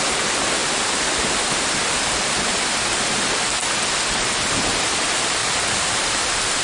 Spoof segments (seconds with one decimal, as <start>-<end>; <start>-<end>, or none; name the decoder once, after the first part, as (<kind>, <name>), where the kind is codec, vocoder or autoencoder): 5.4-6.6 (vocoder, BigVGAN v2)